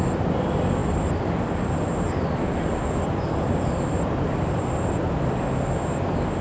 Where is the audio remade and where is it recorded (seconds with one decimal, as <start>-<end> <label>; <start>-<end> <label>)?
0.0-0.8 recorded; 0.8-4.6 remade; 4.6-6.4 recorded